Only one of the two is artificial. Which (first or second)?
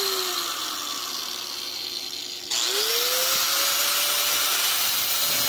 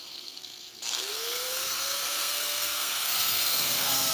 second